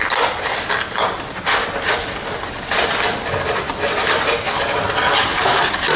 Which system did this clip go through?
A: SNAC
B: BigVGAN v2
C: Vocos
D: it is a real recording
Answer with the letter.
D